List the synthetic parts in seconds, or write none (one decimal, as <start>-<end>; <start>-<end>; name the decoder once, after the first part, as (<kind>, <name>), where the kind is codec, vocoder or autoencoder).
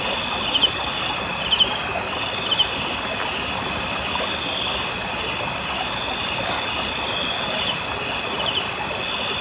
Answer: none